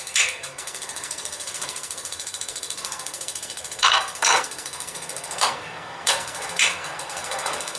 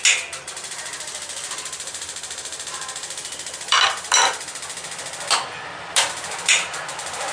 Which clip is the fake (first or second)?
first